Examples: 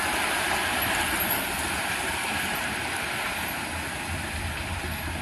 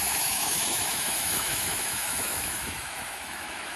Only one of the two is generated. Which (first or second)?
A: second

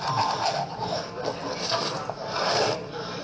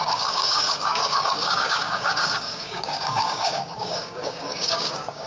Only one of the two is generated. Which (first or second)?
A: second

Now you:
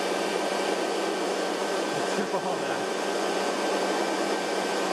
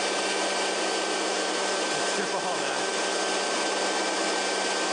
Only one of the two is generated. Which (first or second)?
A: first